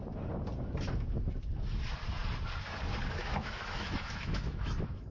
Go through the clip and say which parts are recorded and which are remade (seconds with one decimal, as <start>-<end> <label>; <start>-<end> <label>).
0.0-3.1 recorded; 3.1-5.1 remade